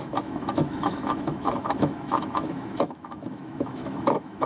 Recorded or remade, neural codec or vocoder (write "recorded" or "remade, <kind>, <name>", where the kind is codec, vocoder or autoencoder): remade, autoencoder, DAC-VAE